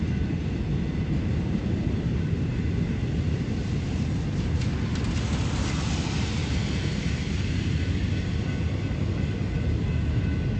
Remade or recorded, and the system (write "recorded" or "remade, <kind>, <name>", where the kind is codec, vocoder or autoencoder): recorded